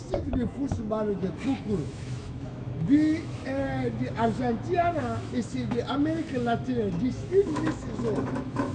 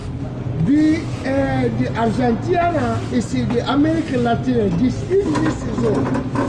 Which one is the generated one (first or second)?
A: first